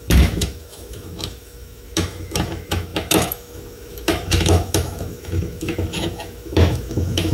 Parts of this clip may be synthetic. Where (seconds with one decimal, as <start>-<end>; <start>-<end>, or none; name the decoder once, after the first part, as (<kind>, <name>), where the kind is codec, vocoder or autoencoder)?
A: 0.0-7.3 (autoencoder, DAC-VAE)